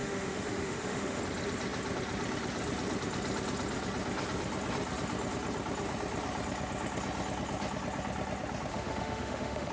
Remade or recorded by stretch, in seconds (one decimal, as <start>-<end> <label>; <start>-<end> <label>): 0.0-1.2 remade; 1.2-8.7 recorded; 8.7-9.7 remade